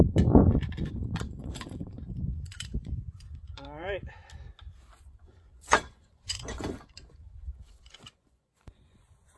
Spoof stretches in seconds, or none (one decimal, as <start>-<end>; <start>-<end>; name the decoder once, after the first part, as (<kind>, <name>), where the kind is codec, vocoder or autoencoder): 0.0-4.2 (vocoder, Vocos); 5.0-9.4